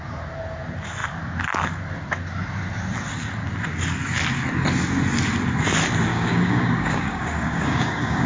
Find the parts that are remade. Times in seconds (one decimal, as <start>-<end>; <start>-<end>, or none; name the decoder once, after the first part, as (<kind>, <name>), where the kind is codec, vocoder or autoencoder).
6.1-8.3 (codec, DAC)